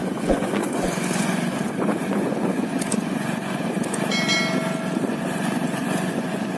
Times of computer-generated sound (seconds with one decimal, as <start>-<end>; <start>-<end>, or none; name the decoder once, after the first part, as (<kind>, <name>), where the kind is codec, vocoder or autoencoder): 0.0-4.0 (vocoder, Vocos); 5.1-6.6